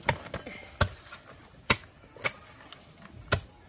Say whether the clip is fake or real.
real